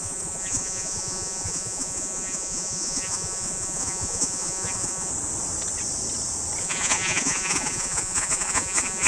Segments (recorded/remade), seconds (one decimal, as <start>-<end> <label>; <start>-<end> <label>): 0.0-5.1 remade; 5.1-6.6 recorded; 6.6-9.1 remade